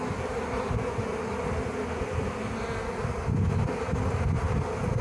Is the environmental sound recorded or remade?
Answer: recorded